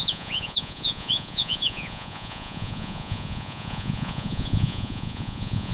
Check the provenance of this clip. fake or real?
fake